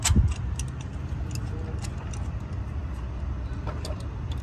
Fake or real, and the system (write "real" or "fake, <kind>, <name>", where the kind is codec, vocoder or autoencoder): real